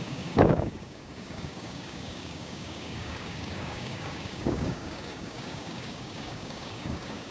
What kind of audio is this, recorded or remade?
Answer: remade